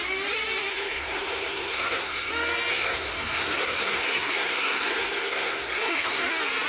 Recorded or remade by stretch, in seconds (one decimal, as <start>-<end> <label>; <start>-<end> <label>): 0.0-0.7 recorded; 0.7-2.3 remade; 2.3-2.7 recorded; 2.7-6.2 remade; 6.2-6.7 recorded